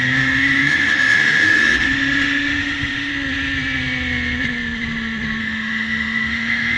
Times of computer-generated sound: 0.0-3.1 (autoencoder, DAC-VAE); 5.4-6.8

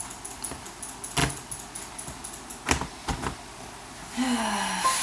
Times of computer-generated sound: none

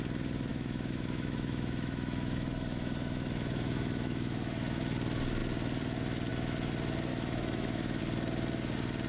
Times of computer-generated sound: 0.5-4.8 (autoencoder, DAC-VAE); 7.1-8.0

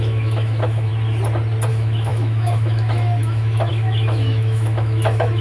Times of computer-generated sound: 0.0-0.9 (autoencoder, DAC-VAE); 1.7-5.4

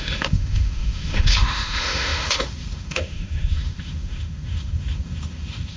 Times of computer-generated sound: 0.0-5.8 (autoencoder, DAC-VAE)

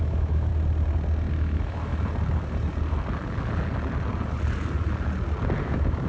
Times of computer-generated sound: 0.0-0.5 (autoencoder, DAC-VAE); 1.3-1.9; 5.6-6.1